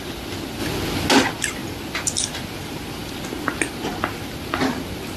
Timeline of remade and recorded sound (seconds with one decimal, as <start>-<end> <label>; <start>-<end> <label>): 0.0-5.2 recorded